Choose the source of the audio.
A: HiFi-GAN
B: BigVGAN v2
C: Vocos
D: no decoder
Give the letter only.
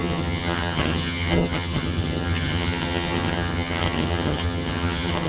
A